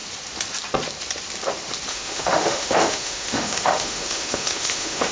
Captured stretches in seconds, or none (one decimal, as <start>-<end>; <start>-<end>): 0.0-1.9